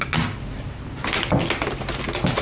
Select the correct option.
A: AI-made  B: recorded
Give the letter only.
B